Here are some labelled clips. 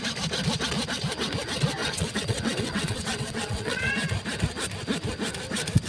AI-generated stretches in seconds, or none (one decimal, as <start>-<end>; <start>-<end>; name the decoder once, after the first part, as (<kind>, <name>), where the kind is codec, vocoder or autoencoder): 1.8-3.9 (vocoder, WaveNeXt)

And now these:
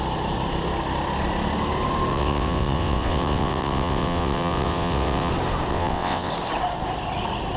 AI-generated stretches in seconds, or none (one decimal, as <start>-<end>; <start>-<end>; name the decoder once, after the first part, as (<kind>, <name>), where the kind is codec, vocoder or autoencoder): 2.1-5.3 (vocoder, WaveNeXt); 5.7-6.3

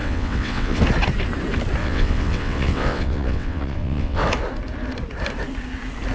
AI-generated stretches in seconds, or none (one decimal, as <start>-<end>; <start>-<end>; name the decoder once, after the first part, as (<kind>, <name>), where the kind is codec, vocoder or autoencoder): 0.0-0.8 (vocoder, WaveNeXt); 1.8-4.2

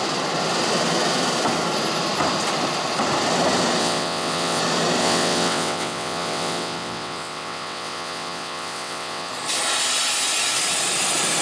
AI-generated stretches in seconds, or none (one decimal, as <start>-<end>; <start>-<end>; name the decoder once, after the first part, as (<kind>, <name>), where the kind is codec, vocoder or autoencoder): 3.8-4.6 (vocoder, WaveNeXt); 5.0-9.3